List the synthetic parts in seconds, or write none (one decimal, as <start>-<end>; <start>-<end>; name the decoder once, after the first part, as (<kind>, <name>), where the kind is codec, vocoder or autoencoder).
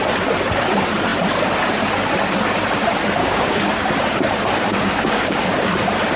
3.2-3.9 (codec, DAC); 4.7-5.5